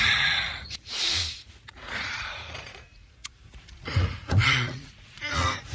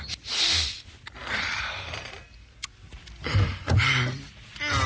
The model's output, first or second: first